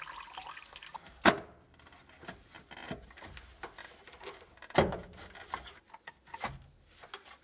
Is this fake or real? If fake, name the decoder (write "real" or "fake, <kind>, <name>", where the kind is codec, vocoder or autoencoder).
real